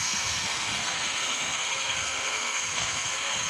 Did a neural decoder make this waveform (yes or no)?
yes